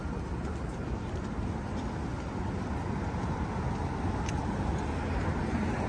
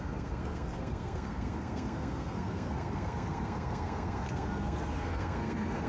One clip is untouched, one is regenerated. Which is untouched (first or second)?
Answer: first